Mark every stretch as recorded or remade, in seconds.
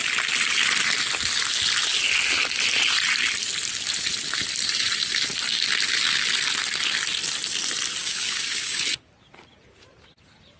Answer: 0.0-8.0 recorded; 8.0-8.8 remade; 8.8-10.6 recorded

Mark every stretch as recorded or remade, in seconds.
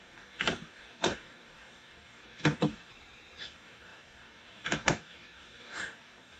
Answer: 0.0-2.9 remade; 2.9-3.4 recorded; 3.4-6.4 remade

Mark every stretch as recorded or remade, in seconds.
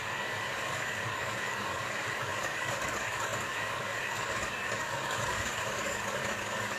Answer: 0.0-6.8 remade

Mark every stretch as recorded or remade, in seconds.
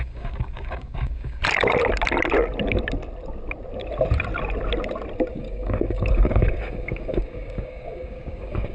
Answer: 0.0-1.4 remade; 1.4-5.3 recorded; 5.3-8.7 remade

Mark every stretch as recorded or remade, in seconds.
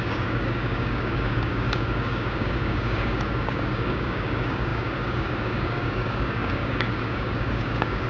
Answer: 0.0-8.1 remade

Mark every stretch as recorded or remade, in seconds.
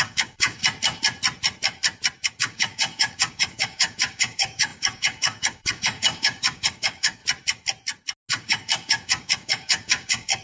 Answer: 0.0-0.6 remade; 0.6-2.4 recorded; 2.4-7.2 remade; 7.2-8.3 recorded; 8.3-10.4 remade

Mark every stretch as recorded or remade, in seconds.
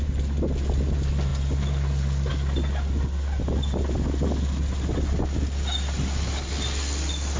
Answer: 0.0-7.4 recorded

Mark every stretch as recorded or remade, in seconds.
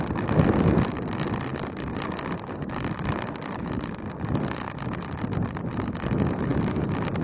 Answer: 0.0-7.2 recorded